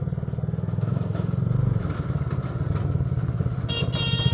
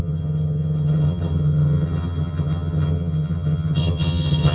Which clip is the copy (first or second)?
second